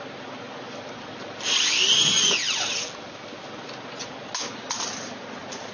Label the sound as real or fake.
real